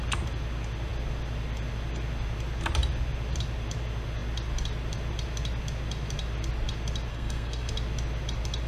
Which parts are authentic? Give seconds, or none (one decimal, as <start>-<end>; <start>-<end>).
0.0-7.1; 7.7-8.7